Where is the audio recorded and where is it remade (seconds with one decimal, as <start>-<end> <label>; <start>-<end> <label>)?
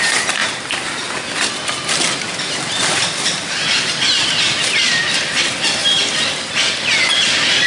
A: 0.0-7.7 recorded